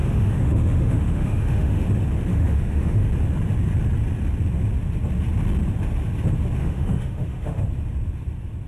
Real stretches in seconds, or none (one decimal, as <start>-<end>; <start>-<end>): 1.8-2.3; 3.1-6.6; 7.6-8.7